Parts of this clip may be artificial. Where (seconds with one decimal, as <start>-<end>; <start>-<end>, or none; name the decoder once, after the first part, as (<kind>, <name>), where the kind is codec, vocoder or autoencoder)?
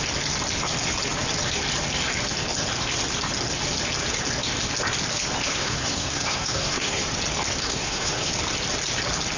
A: 5.5-7.0 (codec, SNAC); 7.6-8.3